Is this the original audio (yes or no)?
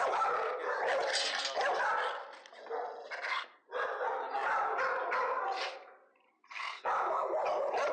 yes